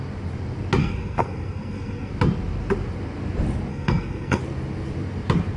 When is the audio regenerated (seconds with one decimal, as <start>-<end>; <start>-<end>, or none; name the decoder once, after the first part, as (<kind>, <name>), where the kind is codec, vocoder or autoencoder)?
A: 0.8-2.1 (codec, SNAC); 3.7-4.4